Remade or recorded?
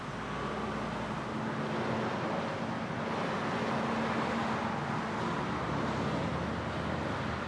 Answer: recorded